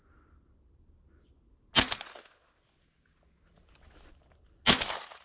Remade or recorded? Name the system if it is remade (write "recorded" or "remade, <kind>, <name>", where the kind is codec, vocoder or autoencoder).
recorded